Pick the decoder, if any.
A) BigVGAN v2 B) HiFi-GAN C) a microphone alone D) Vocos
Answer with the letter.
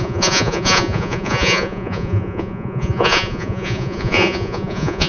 D